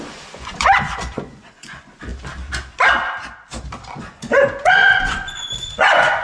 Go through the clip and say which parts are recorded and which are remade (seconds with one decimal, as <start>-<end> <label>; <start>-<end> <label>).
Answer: 0.0-2.1 remade; 2.1-3.9 recorded; 3.9-6.2 remade